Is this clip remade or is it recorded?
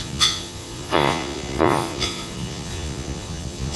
remade